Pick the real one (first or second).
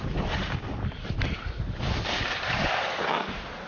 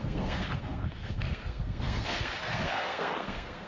first